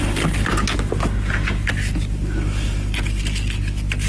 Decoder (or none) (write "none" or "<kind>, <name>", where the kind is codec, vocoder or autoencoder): none